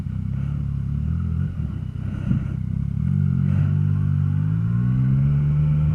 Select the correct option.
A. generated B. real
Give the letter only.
B